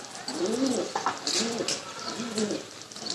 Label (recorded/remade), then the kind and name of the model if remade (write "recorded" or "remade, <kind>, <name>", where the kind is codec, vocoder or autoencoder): recorded